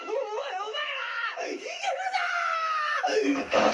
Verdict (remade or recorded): remade